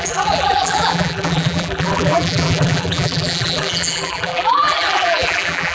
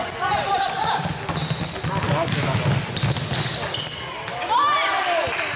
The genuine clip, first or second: second